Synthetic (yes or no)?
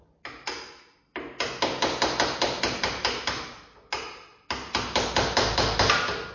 no